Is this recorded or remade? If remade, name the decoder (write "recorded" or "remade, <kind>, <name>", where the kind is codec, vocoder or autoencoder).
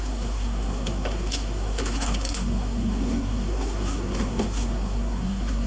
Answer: remade, codec, SNAC